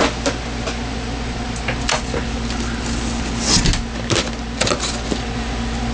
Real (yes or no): yes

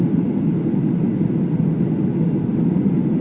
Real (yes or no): yes